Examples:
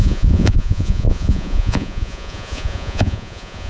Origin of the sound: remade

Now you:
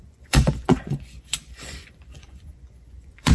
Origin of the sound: remade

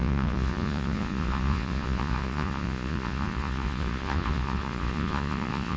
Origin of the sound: remade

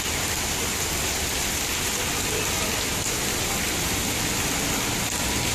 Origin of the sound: recorded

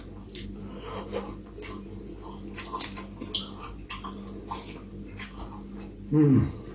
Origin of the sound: recorded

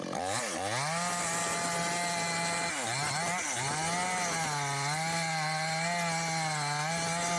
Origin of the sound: recorded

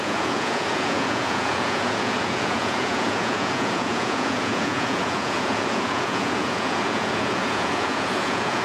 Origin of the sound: remade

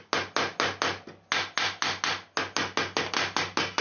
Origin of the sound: recorded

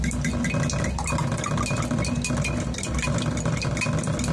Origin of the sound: recorded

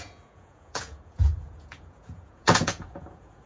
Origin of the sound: remade